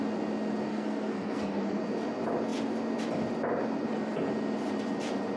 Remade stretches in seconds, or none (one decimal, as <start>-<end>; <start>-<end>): 0.7-1.8